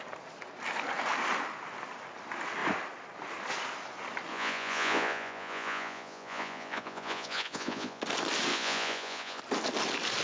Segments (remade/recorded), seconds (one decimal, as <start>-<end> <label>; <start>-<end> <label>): 0.0-4.3 recorded; 4.3-8.0 remade; 8.0-8.5 recorded; 8.5-9.4 remade; 9.4-10.2 recorded